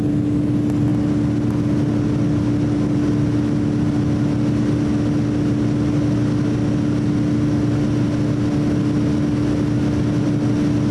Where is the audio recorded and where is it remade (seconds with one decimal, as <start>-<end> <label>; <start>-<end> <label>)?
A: 0.0-10.9 recorded